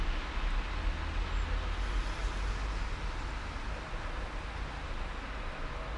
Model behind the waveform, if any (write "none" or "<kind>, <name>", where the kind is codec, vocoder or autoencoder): none